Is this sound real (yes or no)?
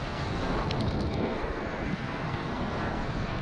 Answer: no